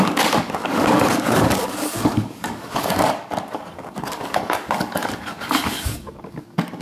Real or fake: fake